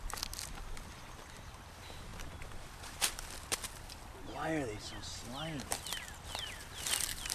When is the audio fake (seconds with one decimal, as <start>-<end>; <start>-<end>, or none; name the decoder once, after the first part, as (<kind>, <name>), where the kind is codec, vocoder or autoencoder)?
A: none